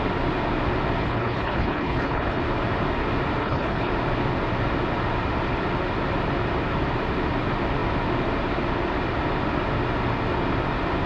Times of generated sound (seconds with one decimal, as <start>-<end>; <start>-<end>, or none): 1.0-2.4; 3.4-3.9